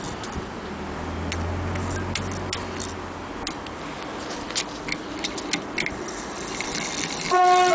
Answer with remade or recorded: recorded